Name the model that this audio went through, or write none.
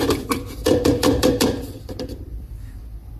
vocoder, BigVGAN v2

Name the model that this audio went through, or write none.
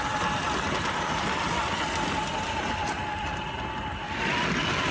none